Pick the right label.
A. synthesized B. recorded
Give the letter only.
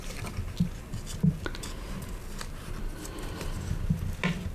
B